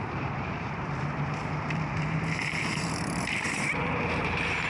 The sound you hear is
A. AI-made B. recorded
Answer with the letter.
A